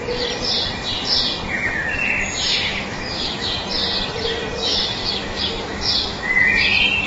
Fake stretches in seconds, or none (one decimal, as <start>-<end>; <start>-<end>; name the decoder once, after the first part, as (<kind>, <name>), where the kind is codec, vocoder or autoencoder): 2.7-3.5 (autoencoder, DAC-VAE); 4.6-6.5